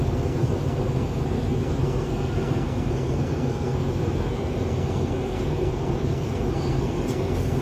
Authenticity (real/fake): fake